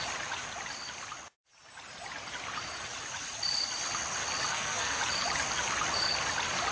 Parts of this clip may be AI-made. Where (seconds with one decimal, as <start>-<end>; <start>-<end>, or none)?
4.5-5.0